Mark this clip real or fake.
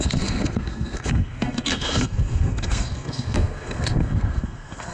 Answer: fake